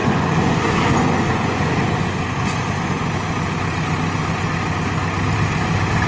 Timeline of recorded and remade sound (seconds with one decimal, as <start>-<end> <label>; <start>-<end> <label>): 0.0-3.1 remade; 3.1-6.1 recorded